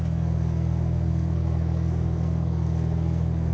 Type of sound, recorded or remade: remade